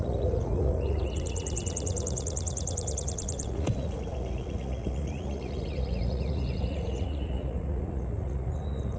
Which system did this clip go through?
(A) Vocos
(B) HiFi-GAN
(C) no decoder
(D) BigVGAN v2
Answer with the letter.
A